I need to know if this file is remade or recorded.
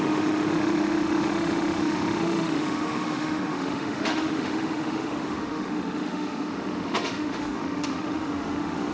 remade